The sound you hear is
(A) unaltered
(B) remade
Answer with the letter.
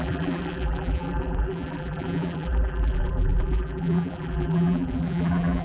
B